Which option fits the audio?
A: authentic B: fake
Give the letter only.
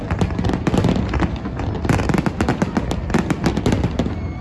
A